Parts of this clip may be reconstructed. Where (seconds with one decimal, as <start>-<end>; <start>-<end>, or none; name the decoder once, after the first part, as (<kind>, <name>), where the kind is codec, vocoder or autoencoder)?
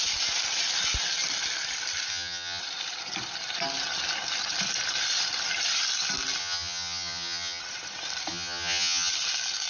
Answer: 2.1-2.6 (vocoder, HiFi-GAN); 6.4-7.6; 8.3-9.1